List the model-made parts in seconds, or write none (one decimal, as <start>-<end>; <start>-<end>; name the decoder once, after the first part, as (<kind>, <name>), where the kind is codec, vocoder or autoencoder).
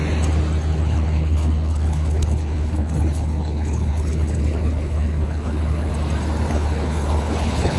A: 0.8-5.9 (codec, HILCodec); 6.5-7.8